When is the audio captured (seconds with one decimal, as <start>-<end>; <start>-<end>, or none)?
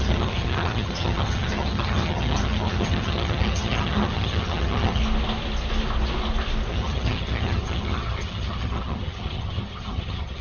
5.0-6.7